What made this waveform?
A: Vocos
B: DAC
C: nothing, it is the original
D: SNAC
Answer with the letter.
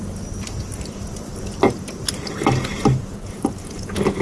C